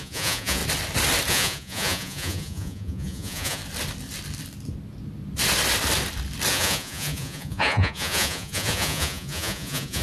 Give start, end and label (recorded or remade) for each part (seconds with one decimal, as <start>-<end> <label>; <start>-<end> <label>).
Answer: 0.0-0.6 remade; 0.6-1.3 recorded; 1.3-3.6 remade; 3.6-6.5 recorded; 6.5-10.0 remade